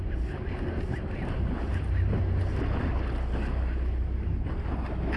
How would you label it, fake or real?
real